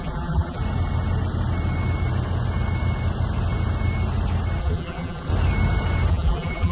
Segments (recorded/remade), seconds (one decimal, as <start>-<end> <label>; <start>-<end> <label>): 0.0-0.6 remade; 0.6-4.6 recorded; 4.6-5.3 remade; 5.3-6.1 recorded; 6.1-6.7 remade